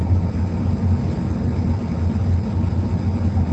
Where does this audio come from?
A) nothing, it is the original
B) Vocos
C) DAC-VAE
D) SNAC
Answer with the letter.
A